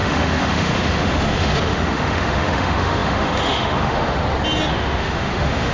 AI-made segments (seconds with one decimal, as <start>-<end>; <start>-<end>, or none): 0.0-4.2; 4.7-5.7